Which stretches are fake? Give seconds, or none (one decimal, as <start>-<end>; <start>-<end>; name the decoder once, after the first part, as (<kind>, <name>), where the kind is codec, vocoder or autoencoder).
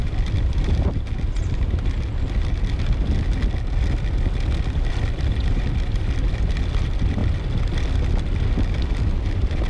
4.9-7.2 (vocoder, BigVGAN v2); 9.1-9.7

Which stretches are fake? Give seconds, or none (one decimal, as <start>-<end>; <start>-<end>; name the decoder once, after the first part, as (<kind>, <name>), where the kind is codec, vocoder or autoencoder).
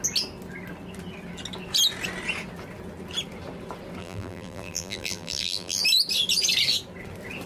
4.0-5.8 (vocoder, BigVGAN v2)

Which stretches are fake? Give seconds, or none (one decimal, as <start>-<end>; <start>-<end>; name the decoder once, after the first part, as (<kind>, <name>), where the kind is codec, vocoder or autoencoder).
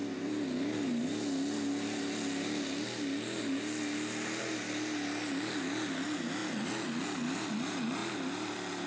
0.0-1.1 (vocoder, BigVGAN v2); 8.0-8.9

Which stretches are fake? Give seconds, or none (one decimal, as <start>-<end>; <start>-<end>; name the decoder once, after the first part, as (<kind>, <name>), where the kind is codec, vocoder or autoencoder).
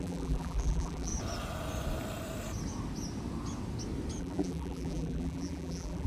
0.0-1.1 (vocoder, BigVGAN v2); 4.2-6.1